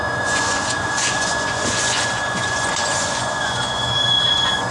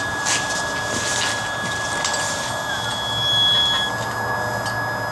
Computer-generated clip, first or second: first